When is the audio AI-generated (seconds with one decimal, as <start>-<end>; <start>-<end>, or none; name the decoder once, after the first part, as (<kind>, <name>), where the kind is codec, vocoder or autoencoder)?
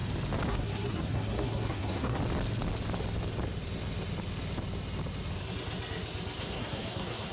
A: 0.5-2.2 (codec, SNAC); 6.4-7.3